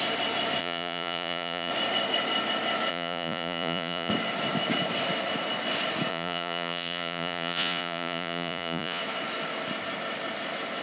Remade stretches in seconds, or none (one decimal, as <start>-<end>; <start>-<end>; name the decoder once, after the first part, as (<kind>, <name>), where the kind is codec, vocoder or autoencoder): 0.6-1.7 (vocoder, Vocos); 2.9-4.1; 6.1-9.0